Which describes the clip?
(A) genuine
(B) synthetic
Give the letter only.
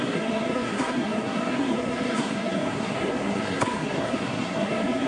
B